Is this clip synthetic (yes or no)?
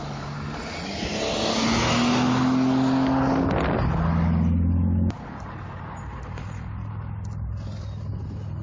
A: no